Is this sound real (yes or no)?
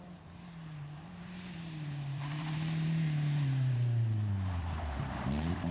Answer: no